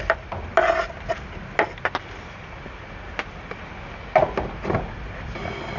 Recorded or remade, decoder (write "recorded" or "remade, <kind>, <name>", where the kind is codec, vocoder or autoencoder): recorded